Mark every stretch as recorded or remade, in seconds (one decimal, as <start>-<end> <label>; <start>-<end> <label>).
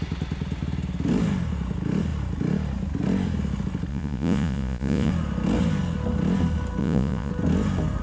0.0-3.9 recorded; 3.9-5.1 remade; 5.1-6.8 recorded; 6.8-7.3 remade; 7.3-8.0 recorded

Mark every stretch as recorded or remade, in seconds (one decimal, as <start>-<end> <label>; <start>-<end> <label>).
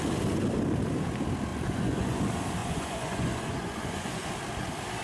0.0-1.5 recorded; 1.5-2.2 remade; 2.2-2.6 recorded; 2.6-4.3 remade; 4.3-5.0 recorded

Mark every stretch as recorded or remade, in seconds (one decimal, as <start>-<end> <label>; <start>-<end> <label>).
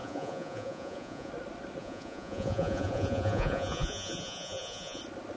0.0-1.3 remade; 1.3-1.8 recorded; 1.8-5.0 remade; 5.0-5.4 recorded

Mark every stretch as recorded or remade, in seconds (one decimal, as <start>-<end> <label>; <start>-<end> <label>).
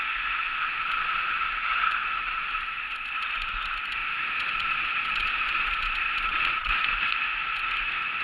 0.0-0.4 recorded; 0.4-1.4 remade; 1.4-4.0 recorded; 4.0-6.8 remade; 6.8-8.2 recorded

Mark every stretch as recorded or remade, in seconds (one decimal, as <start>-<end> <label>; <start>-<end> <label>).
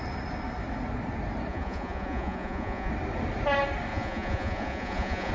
0.0-1.5 recorded; 1.5-2.9 remade; 2.9-3.9 recorded; 3.9-5.3 remade